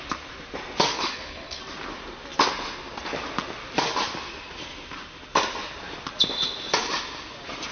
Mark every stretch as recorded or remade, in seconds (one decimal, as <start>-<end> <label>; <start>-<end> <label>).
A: 0.0-0.9 recorded; 0.9-1.6 remade; 1.6-7.7 recorded